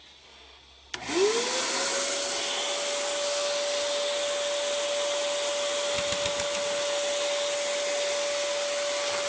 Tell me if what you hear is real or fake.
real